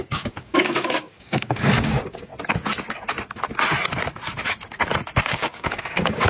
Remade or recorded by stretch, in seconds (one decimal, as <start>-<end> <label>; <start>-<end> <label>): 0.0-2.3 remade; 2.3-5.2 recorded; 5.2-6.3 remade